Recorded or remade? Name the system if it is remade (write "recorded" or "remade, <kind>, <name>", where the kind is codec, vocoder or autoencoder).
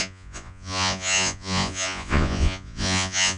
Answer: remade, vocoder, Vocos